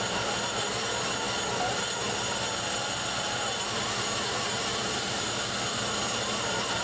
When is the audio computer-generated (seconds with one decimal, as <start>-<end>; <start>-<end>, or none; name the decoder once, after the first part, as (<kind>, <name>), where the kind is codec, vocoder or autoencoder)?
4.7-5.4 (vocoder, BigVGAN v2)